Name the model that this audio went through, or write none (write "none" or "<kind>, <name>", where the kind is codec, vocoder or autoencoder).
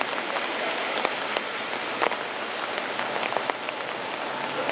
none